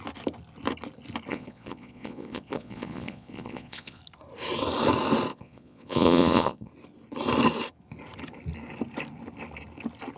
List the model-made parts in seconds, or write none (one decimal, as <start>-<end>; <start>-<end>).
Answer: 1.3-4.0; 5.3-6.7